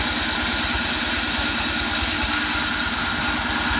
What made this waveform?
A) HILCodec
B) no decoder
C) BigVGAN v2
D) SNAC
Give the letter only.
B